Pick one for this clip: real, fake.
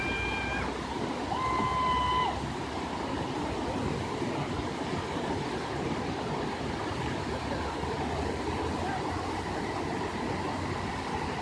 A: real